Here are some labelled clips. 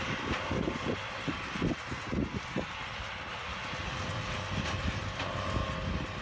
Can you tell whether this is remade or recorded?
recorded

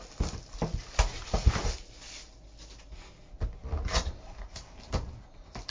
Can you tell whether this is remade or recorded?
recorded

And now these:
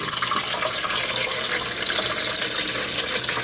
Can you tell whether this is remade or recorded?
recorded